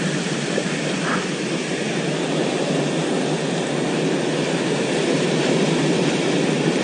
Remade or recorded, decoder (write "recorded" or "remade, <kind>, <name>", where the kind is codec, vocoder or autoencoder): recorded